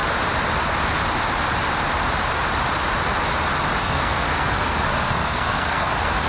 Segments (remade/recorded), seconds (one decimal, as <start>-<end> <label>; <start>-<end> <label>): 0.0-3.8 recorded; 3.8-6.3 remade